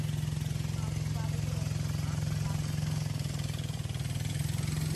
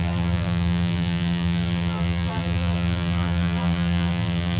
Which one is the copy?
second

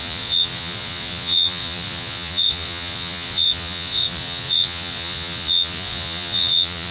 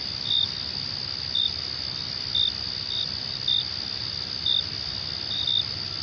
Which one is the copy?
first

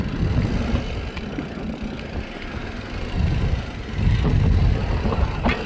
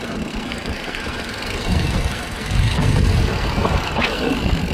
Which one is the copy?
second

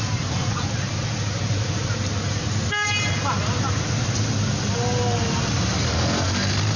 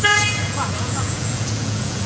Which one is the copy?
second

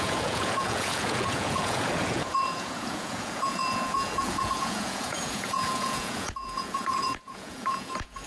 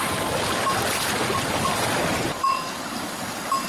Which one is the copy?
first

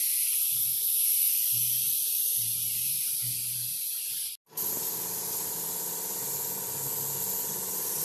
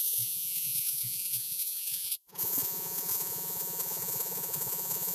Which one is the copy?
second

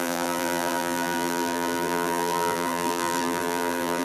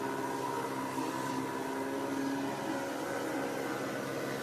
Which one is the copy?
first